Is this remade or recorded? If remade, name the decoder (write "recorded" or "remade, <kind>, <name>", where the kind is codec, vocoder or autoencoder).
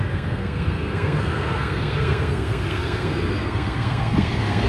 remade, codec, SNAC